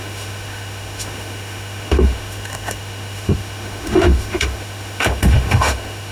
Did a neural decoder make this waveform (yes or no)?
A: yes